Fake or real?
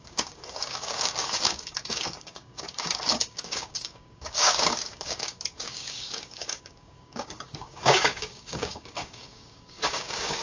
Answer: fake